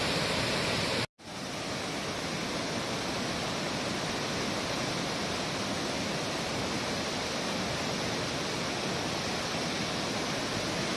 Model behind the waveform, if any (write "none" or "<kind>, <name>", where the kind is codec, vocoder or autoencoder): none